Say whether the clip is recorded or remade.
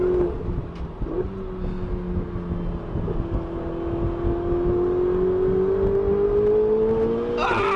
recorded